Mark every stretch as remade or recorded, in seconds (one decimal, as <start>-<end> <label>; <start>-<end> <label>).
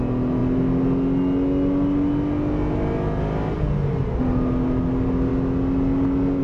0.0-6.4 recorded